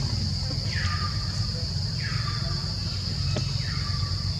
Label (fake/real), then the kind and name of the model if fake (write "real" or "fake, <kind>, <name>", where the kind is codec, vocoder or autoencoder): real